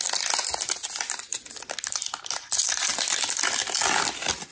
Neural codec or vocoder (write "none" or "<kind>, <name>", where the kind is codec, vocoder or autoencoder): none